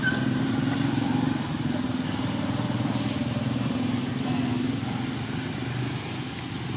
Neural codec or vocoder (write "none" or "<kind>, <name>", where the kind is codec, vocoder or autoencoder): none